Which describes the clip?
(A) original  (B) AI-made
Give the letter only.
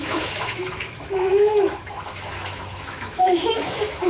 B